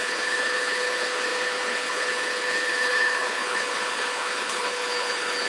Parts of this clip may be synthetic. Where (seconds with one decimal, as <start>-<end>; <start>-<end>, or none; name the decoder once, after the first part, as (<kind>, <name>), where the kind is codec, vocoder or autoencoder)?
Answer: 0.0-5.5 (codec, HILCodec)